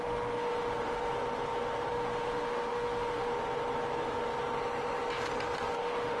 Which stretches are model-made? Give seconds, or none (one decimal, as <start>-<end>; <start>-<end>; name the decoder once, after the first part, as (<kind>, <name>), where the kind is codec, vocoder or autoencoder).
0.0-1.1 (autoencoder, DAC-VAE); 1.9-3.3; 5.7-6.2